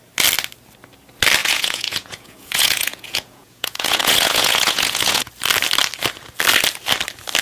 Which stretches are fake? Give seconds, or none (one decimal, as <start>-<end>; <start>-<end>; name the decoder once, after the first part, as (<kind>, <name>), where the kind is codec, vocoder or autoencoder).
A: 1.4-5.3 (vocoder, Vocos)